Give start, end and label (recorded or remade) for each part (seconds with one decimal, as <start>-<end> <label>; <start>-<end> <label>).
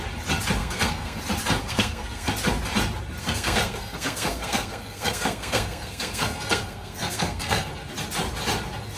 0.0-0.6 recorded; 0.6-1.2 remade; 1.2-1.6 recorded; 1.6-2.3 remade; 2.3-3.2 recorded; 3.2-7.7 remade; 7.7-9.0 recorded